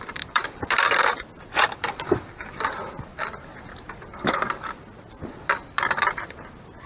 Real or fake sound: fake